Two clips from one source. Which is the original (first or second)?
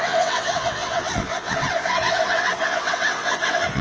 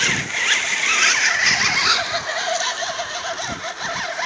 second